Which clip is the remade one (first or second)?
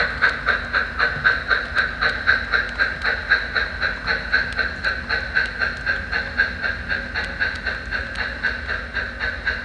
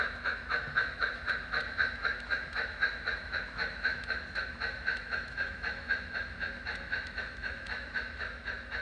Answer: second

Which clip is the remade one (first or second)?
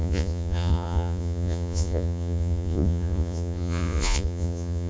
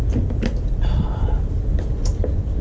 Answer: first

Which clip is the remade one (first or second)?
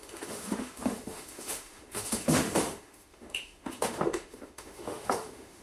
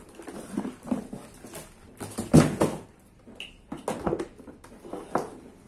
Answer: first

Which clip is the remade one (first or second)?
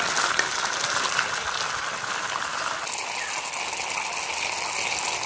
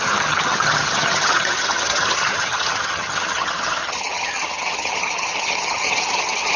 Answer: second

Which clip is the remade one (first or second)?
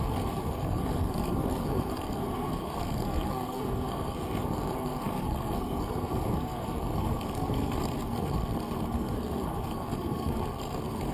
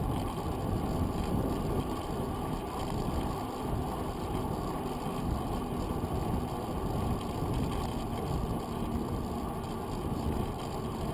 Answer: first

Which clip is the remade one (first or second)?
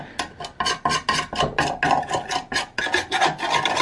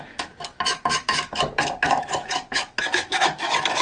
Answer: second